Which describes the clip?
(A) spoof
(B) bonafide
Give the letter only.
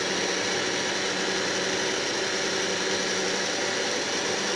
B